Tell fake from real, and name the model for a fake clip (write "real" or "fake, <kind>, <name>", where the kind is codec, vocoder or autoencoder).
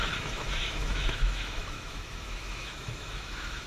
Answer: fake, autoencoder, DAC-VAE